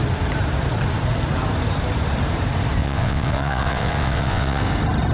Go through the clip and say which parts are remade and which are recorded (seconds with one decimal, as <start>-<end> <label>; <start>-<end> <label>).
0.0-2.8 recorded; 2.8-4.6 remade; 4.6-5.1 recorded